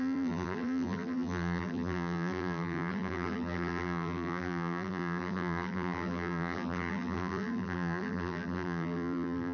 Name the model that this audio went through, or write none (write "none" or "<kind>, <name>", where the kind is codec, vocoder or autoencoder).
vocoder, BigVGAN v2